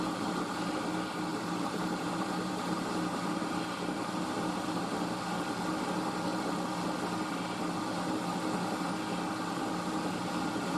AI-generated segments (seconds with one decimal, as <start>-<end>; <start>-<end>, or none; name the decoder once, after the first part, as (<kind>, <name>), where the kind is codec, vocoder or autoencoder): 1.3-4.8 (vocoder, BigVGAN v2)